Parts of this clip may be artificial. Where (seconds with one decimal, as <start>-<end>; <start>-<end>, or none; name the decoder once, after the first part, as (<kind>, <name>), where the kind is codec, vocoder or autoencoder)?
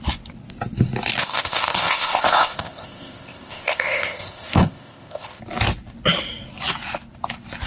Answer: 1.2-5.4 (codec, ZipCodec)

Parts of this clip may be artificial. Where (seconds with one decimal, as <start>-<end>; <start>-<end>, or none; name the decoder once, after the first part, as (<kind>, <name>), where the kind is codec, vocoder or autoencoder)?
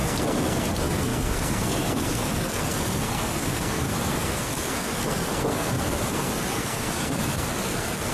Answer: 0.0-8.1 (codec, SNAC)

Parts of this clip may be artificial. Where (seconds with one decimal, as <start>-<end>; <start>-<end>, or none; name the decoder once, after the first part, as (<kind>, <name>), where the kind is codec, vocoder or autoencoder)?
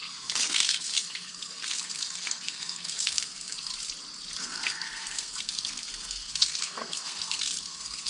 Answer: 0.0-3.7 (codec, SNAC); 4.4-8.1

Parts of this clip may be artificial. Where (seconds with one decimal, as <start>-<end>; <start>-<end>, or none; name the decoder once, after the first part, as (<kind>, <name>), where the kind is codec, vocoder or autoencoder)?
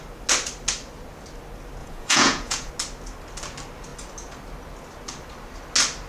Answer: 1.8-2.7 (vocoder, Vocos)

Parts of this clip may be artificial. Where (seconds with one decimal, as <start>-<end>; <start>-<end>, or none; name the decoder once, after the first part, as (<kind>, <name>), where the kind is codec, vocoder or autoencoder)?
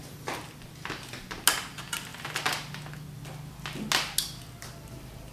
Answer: none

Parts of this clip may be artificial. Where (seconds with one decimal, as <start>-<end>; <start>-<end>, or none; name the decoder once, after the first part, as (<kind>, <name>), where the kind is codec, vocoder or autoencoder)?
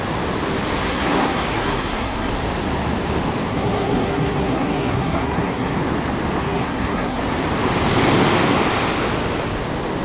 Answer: 0.8-2.3 (codec, SNAC); 3.5-5.8; 6.4-7.2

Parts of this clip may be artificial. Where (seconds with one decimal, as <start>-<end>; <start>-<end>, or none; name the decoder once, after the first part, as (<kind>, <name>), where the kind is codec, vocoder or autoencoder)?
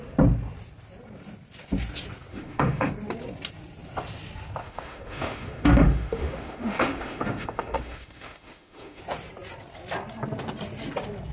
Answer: 2.3-2.9 (autoencoder, DAC-VAE); 4.6-9.0